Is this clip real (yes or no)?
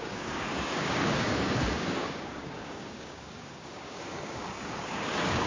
no